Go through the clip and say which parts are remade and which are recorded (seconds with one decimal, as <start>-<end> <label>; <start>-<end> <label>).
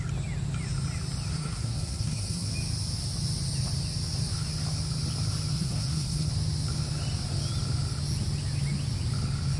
0.0-1.3 recorded; 1.3-2.5 remade; 2.5-5.5 recorded; 5.5-6.3 remade; 6.3-9.6 recorded